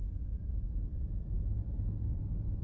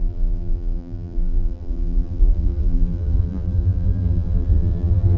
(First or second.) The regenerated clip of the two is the second